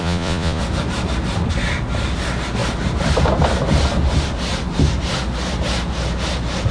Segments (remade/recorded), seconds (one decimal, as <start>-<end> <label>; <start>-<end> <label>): 0.0-0.6 remade; 0.6-6.7 recorded